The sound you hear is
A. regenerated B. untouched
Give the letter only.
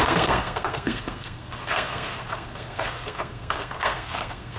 A